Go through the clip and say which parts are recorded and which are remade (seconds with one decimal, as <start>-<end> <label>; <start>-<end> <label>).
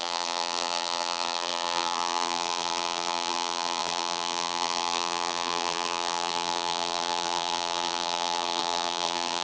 0.0-9.4 remade